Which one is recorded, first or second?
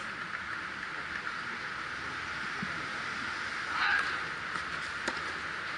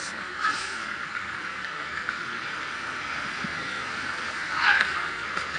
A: first